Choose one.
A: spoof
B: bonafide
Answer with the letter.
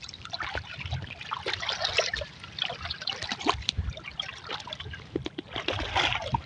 B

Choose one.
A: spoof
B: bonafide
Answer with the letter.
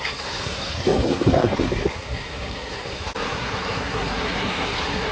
A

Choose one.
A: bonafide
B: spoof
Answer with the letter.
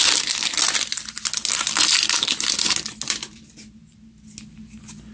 A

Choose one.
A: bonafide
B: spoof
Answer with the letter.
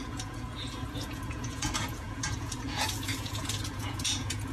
B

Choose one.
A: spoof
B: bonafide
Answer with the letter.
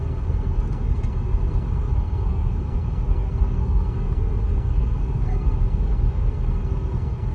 A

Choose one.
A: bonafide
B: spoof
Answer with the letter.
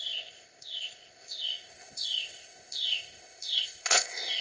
B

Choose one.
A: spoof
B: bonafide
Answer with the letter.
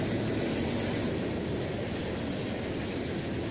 B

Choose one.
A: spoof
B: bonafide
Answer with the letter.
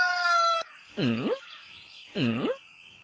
A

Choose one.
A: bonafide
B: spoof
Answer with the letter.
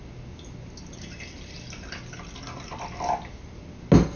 A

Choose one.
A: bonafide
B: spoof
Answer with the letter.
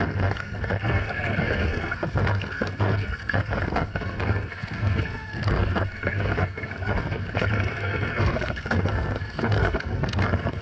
B